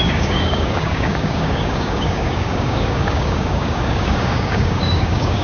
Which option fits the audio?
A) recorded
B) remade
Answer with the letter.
B